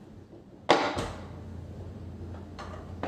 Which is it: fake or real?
real